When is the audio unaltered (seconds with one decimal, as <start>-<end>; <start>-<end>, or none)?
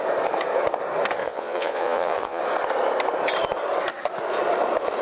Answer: 0.0-1.2; 2.4-5.0